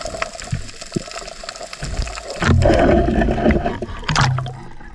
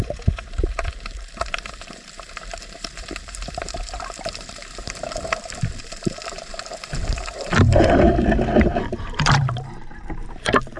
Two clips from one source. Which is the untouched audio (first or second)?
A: first